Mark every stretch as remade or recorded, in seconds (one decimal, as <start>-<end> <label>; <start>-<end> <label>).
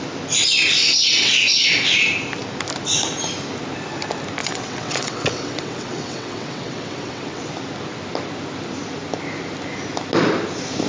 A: 0.0-0.8 recorded; 0.8-1.7 remade; 1.7-4.4 recorded; 4.4-7.5 remade; 7.5-10.9 recorded